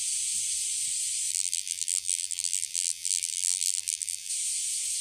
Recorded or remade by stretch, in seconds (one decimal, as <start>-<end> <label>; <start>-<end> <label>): 0.0-1.3 recorded; 1.3-4.3 remade; 4.3-5.0 recorded